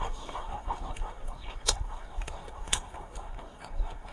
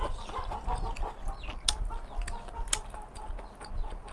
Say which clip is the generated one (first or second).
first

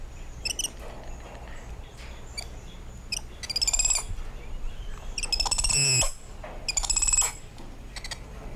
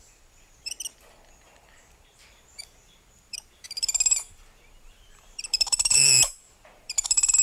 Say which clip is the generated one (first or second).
second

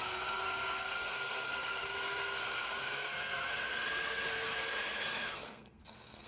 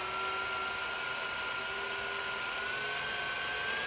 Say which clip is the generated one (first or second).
first